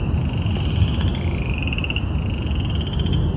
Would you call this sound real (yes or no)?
yes